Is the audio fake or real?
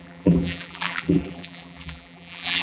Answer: fake